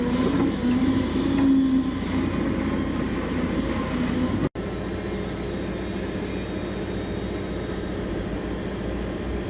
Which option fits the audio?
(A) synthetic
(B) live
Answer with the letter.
B